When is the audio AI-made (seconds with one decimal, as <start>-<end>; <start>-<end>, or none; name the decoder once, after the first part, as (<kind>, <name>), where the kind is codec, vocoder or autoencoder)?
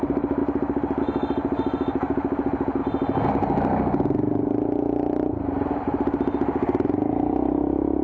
none